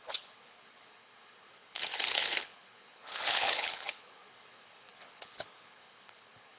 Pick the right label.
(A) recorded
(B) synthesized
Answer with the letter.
B